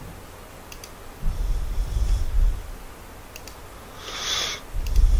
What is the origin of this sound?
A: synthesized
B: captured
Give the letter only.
B